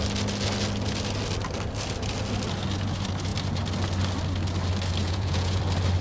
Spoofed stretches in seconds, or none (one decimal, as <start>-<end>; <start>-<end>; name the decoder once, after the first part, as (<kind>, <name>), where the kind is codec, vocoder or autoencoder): 5.0-5.6 (vocoder, Vocos)